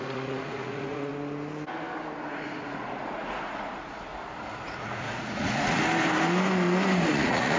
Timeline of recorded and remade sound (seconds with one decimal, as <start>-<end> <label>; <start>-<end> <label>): 0.0-1.1 remade; 1.1-2.3 recorded; 2.3-4.1 remade; 4.1-4.6 recorded; 4.6-5.8 remade; 5.8-7.1 recorded; 7.1-7.6 remade